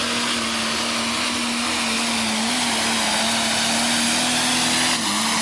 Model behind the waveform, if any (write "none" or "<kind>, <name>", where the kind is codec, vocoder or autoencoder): none